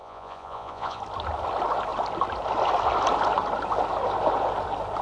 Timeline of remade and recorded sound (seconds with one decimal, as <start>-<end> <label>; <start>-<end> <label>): 0.0-1.0 remade; 1.0-5.0 recorded